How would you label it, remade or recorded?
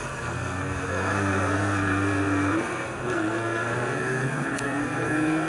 remade